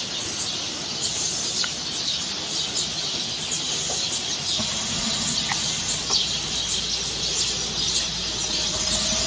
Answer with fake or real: real